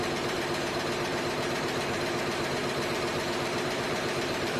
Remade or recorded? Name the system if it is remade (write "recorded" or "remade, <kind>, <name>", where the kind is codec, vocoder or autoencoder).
remade, vocoder, BigVGAN v2